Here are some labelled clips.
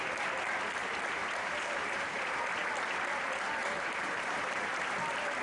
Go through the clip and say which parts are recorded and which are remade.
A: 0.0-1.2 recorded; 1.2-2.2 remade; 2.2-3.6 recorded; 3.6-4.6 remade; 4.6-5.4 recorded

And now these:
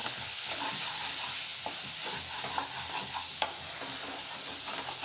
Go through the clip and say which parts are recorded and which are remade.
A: 0.0-0.6 remade; 0.6-5.0 recorded

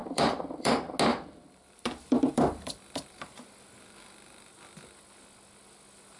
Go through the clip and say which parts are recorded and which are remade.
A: 0.0-0.7 remade; 0.7-1.1 recorded; 1.1-4.5 remade; 4.5-6.2 recorded

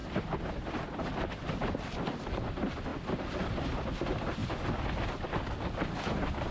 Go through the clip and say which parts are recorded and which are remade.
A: 0.0-6.5 recorded

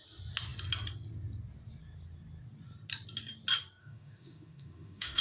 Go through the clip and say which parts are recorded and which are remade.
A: 0.0-3.8 recorded; 3.8-5.2 remade

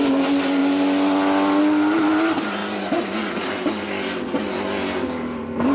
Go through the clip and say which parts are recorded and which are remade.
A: 0.0-2.6 recorded; 2.6-3.7 remade; 3.7-5.7 recorded